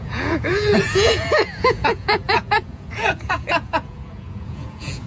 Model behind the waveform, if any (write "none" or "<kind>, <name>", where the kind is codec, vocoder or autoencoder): vocoder, Vocos